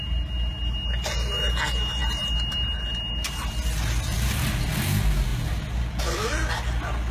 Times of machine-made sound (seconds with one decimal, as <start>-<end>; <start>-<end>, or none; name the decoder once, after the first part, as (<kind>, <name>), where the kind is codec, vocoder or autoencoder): none